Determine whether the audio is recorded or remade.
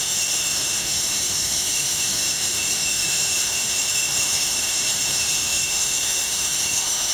remade